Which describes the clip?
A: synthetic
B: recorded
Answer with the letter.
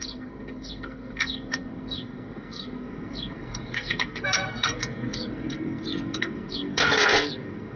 A